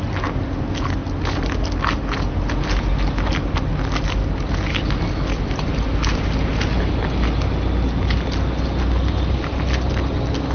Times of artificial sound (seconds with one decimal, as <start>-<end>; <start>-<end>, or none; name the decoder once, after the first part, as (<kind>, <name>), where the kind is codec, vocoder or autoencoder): none